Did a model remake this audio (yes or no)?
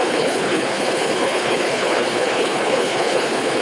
yes